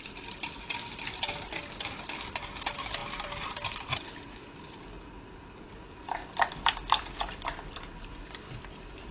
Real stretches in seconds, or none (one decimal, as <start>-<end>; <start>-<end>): 0.0-9.1